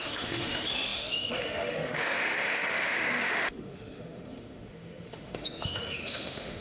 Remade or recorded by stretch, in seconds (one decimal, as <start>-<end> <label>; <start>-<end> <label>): 0.0-6.6 remade